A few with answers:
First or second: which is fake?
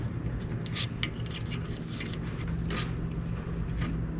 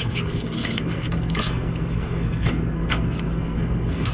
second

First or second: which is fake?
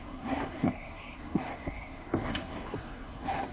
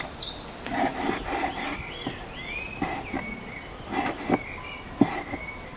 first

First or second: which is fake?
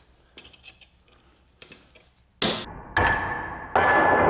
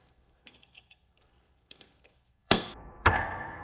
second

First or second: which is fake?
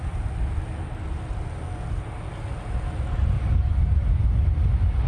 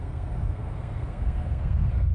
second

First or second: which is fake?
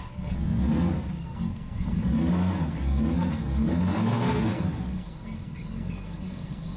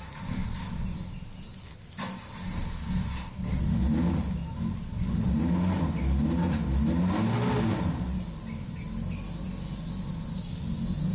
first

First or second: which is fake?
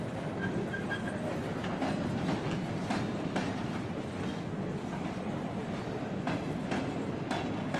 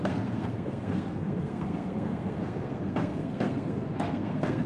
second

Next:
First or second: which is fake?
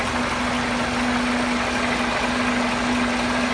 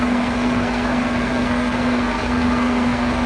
second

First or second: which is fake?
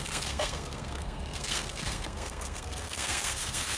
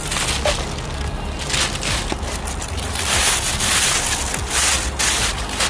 first